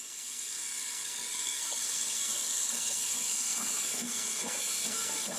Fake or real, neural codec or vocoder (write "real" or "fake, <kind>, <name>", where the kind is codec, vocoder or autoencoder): fake, codec, SNAC